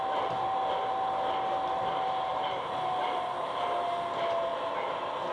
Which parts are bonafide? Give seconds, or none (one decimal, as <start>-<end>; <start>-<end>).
0.0-5.3